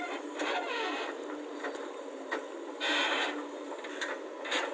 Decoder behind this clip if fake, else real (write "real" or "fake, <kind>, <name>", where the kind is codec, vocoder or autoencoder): real